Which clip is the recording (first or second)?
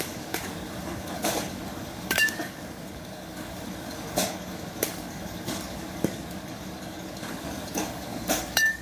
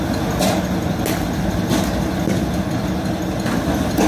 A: second